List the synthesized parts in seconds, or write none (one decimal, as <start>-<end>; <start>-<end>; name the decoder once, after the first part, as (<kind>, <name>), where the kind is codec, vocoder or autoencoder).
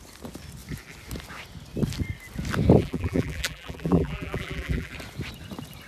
2.8-4.9 (vocoder, BigVGAN v2)